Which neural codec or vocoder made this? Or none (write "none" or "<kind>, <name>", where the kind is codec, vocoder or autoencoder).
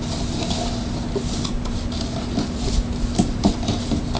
none